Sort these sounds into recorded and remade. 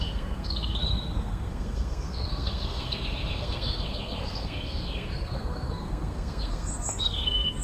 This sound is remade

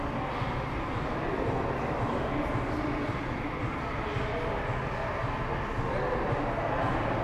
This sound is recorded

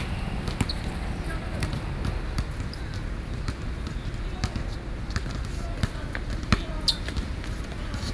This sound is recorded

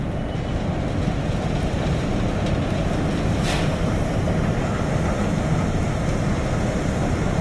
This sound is recorded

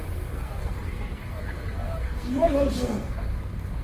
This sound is remade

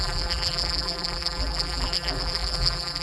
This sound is remade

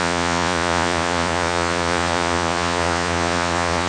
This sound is remade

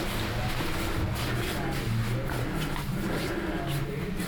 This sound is recorded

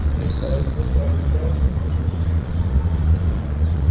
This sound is remade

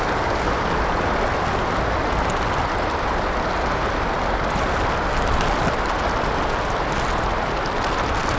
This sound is recorded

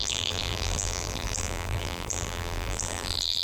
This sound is remade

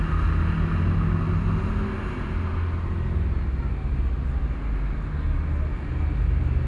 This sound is recorded